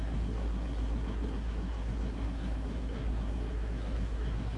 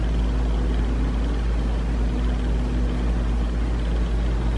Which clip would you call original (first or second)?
second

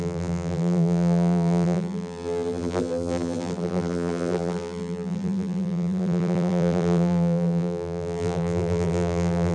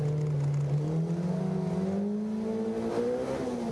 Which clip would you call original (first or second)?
second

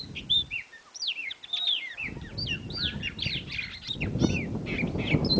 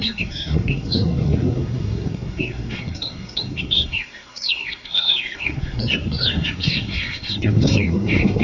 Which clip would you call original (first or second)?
first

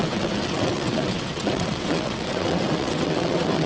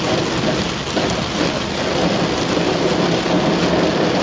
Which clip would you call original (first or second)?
second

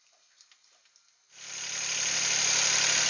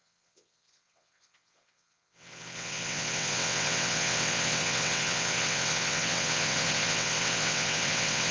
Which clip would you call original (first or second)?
first